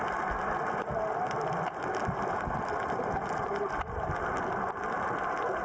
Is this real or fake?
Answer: real